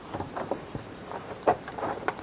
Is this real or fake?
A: fake